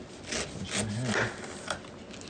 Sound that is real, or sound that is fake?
real